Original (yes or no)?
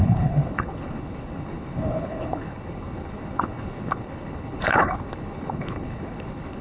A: no